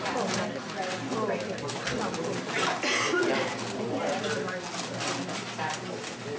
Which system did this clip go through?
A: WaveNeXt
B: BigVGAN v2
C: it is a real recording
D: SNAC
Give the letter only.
C